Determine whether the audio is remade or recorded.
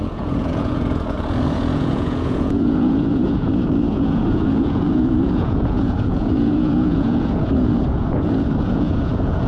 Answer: remade